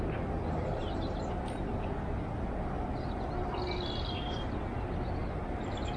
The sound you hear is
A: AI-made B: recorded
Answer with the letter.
B